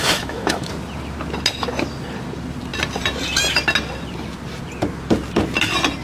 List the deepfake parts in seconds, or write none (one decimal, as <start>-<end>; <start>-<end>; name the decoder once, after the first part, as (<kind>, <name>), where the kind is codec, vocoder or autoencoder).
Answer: 0.0-0.7 (autoencoder, DAC-VAE)